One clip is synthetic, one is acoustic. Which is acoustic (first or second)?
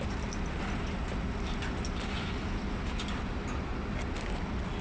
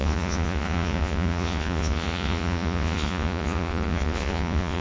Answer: first